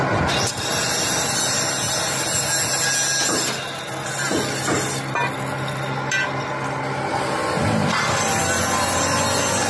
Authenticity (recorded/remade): recorded